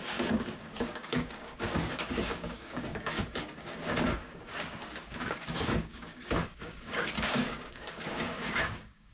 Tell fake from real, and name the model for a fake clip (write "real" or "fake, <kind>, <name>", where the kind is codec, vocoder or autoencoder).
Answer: fake, codec, DAC